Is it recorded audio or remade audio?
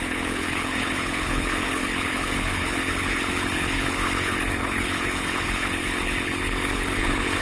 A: remade